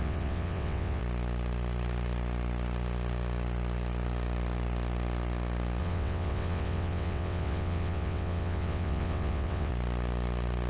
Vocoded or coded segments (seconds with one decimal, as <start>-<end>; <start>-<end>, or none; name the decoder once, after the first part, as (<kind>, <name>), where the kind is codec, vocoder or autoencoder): 0.0-1.0 (vocoder, WaveNeXt); 5.8-9.7